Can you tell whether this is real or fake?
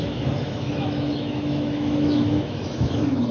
fake